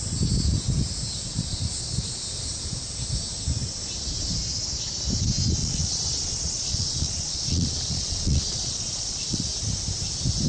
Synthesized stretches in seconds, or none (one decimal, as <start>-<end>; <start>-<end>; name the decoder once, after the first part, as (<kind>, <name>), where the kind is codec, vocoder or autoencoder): 5.6-9.4 (vocoder, Vocos)

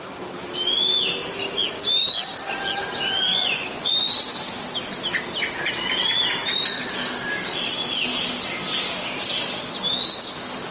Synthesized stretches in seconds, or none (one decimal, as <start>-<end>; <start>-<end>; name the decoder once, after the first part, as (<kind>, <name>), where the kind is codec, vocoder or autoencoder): 3.3-4.1 (vocoder, Vocos)

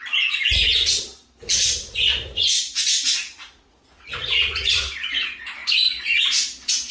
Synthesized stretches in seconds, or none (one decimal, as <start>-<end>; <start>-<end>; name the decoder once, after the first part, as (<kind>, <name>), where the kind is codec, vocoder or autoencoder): 2.1-4.8 (vocoder, Vocos); 5.6-6.2

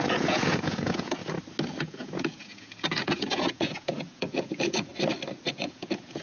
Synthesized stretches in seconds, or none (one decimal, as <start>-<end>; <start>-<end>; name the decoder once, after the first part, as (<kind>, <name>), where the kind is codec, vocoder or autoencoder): 0.0-1.2 (vocoder, Vocos); 1.8-4.9; 5.5-6.2